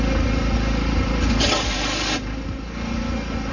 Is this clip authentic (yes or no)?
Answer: yes